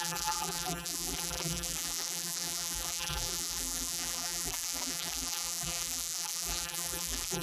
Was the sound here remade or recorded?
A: remade